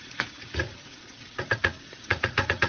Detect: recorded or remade remade